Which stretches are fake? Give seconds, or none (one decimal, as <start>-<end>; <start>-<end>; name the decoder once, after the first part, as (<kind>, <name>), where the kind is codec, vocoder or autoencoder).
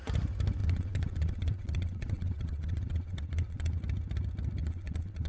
0.6-3.8 (vocoder, WaveNeXt); 4.6-5.3